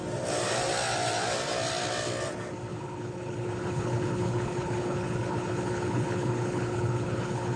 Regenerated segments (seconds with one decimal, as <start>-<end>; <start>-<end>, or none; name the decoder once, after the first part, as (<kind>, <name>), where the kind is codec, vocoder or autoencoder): 2.7-7.6 (codec, HILCodec)